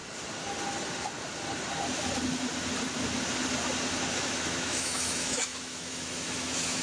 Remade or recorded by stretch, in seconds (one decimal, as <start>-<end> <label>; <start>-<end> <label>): 0.0-4.1 recorded; 4.1-6.8 remade